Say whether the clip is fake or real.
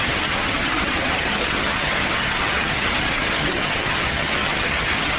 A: fake